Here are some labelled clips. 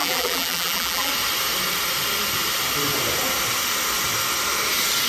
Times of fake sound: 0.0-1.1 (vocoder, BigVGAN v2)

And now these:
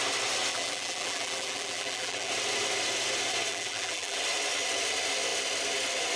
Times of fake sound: 0.5-2.3 (vocoder, BigVGAN v2); 3.5-4.2